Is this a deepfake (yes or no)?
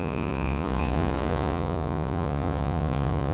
yes